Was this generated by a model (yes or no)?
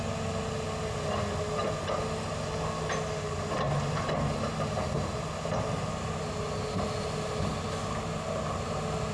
no